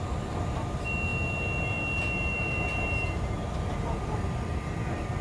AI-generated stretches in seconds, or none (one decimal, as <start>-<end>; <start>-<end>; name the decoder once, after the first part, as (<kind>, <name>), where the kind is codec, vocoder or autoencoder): none